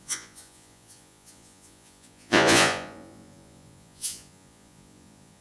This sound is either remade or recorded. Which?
remade